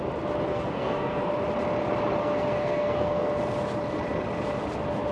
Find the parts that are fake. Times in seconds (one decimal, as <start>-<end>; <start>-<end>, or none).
0.5-1.3; 2.2-3.3